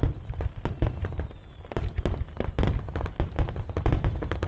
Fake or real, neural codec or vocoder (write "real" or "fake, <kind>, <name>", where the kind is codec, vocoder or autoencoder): real